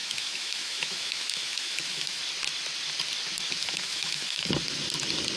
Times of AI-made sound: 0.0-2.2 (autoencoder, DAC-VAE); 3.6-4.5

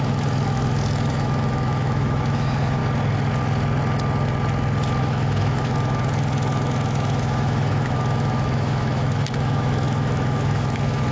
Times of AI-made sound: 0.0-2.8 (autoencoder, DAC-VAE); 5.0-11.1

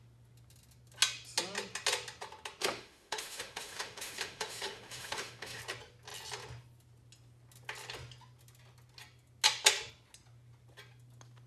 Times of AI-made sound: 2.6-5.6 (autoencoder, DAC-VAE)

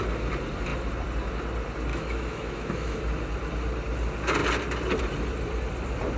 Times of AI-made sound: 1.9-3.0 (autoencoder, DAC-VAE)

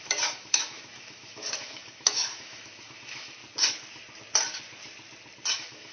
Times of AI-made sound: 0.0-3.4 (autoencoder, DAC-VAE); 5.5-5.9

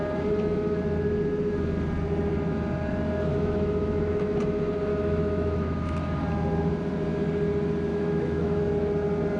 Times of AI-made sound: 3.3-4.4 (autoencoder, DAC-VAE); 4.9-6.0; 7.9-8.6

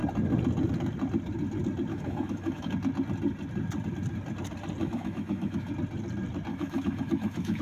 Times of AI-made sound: 1.9-2.7 (autoencoder, DAC-VAE); 4.8-5.7; 6.5-7.6

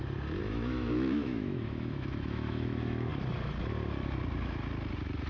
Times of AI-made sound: 0.4-3.1 (autoencoder, DAC-VAE)